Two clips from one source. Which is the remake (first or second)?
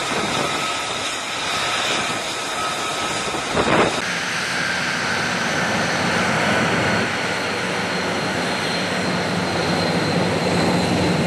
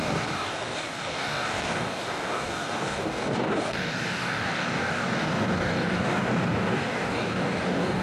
second